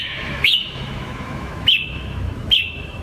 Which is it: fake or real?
fake